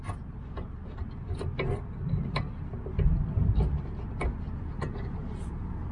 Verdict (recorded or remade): recorded